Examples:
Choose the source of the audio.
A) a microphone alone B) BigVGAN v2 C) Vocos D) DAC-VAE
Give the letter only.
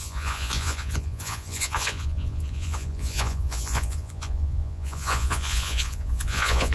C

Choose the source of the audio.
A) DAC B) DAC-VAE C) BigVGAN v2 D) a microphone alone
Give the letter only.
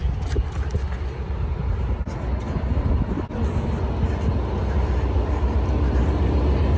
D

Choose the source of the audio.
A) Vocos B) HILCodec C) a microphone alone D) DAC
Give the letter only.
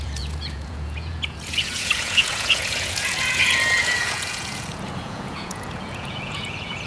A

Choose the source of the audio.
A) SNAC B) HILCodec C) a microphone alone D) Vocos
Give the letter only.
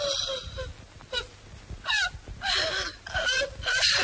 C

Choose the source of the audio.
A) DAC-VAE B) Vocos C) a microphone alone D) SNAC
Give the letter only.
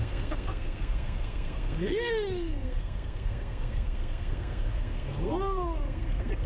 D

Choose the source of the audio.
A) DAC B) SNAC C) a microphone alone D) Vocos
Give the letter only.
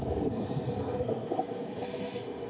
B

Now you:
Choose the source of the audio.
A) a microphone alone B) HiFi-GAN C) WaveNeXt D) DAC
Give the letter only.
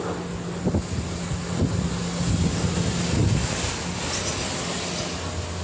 A